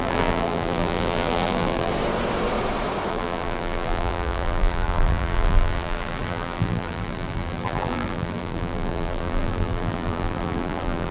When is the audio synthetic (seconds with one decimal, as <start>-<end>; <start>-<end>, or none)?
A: 0.0-1.9; 3.1-11.1